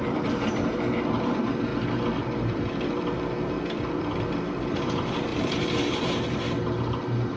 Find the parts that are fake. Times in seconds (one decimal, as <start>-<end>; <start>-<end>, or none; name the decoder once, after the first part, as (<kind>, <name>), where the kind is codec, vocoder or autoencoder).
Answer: 0.0-1.7 (vocoder, BigVGAN v2); 4.7-7.4